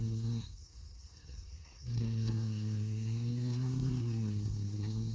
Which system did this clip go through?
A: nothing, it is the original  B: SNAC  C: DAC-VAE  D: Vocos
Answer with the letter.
B